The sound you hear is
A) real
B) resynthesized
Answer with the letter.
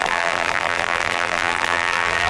B